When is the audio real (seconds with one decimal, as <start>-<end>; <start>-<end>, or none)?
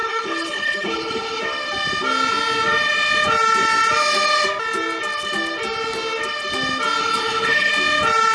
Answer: 1.4-7.0; 7.7-8.3